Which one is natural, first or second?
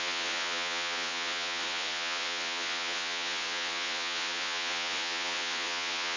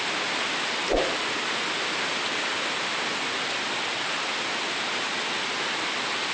second